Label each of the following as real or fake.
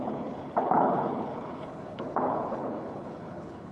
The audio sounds fake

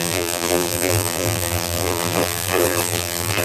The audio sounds fake